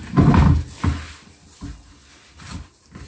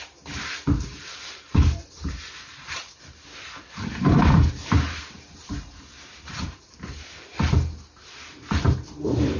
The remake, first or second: second